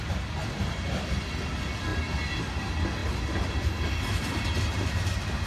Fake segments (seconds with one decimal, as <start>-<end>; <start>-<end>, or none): 3.0-5.5